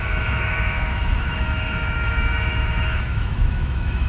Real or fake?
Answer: fake